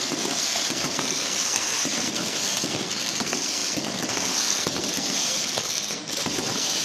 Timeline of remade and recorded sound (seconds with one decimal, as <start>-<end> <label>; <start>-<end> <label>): 0.0-6.8 remade